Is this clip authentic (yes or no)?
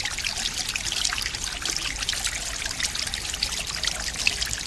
yes